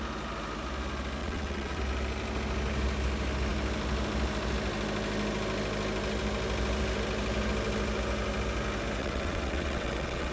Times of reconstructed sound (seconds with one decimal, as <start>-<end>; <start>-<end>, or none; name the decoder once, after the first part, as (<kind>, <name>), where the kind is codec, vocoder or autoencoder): 1.2-1.8 (vocoder, WaveNeXt); 9.0-10.3